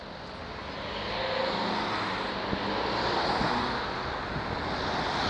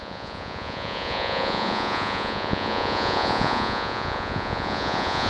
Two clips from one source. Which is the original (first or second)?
first